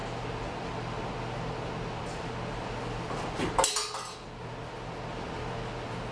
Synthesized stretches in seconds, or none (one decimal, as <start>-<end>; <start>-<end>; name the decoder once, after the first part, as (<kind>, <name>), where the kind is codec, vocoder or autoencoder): none